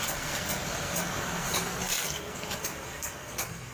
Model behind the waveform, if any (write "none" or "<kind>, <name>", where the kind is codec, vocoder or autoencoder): codec, SNAC